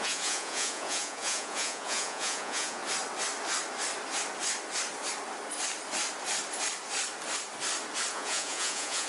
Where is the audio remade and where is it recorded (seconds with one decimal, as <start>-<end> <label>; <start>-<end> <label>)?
0.0-2.8 remade; 2.8-8.1 recorded; 8.1-9.1 remade